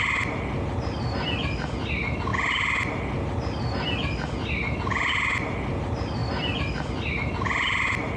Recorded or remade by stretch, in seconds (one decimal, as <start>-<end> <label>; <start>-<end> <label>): 0.0-8.2 recorded